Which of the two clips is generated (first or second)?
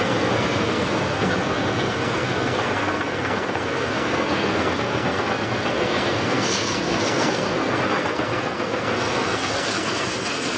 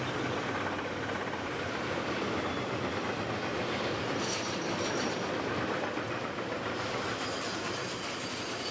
first